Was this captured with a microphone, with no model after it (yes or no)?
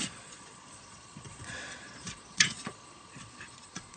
no